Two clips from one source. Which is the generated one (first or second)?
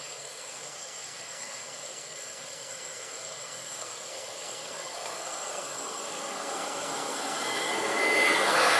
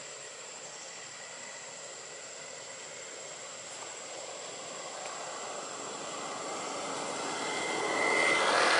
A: first